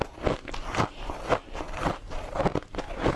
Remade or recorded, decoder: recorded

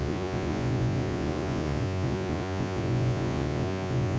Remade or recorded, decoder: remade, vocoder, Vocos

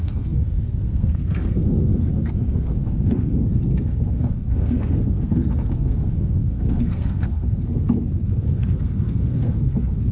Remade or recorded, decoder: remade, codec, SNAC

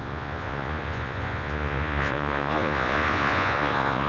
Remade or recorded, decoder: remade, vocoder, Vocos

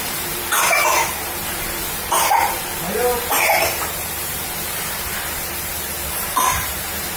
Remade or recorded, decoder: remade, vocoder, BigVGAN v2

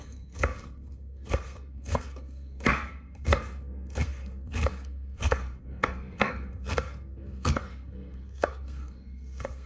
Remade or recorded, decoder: remade, codec, SNAC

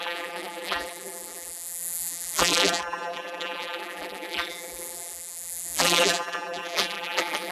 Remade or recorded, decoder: remade, vocoder, BigVGAN v2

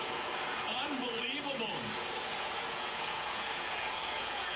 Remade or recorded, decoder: remade, vocoder, Vocos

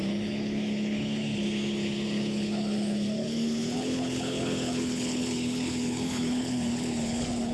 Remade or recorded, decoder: remade, codec, HILCodec